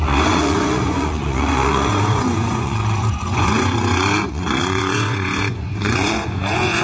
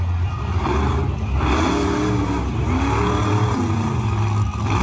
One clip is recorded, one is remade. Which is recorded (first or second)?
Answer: second